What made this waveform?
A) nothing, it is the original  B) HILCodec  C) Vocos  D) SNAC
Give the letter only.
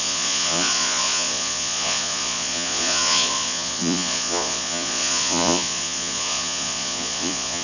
C